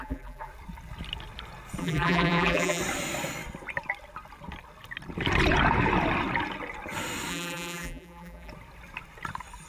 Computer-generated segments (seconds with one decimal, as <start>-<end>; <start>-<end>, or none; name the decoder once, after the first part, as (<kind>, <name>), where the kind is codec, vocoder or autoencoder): 0.0-0.5 (vocoder, BigVGAN v2); 1.8-2.8; 7.3-8.5